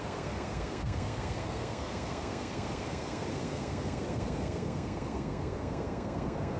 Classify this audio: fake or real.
fake